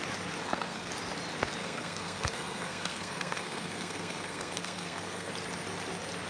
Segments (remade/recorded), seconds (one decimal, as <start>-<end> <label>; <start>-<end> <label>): 0.0-0.4 recorded; 0.4-0.9 remade; 0.9-1.6 recorded; 1.6-5.3 remade; 5.3-6.3 recorded